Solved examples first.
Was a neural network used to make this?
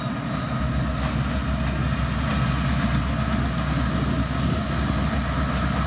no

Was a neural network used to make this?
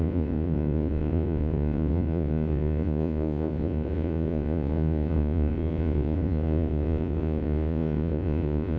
yes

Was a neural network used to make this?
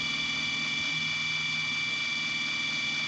no